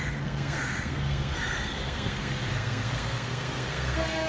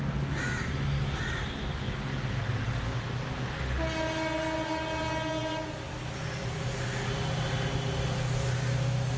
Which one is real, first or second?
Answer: second